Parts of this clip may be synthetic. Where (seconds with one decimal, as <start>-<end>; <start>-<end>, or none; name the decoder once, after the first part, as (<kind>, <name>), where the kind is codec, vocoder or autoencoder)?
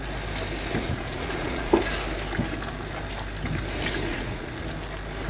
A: 0.8-1.7 (vocoder, Vocos); 4.1-4.6